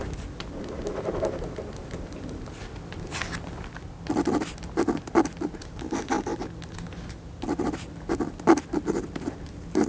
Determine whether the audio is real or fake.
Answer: real